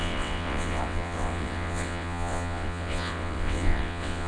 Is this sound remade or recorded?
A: remade